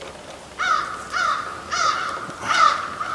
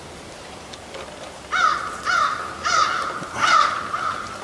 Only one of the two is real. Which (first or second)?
first